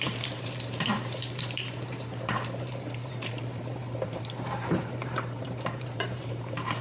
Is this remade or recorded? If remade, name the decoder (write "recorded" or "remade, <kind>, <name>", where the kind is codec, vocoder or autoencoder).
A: remade, vocoder, BigVGAN v2